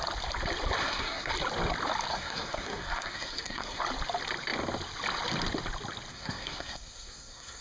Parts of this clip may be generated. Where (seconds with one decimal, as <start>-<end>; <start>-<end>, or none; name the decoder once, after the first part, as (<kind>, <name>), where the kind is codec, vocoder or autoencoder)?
0.8-1.3 (codec, SNAC); 2.1-3.8; 6.1-7.6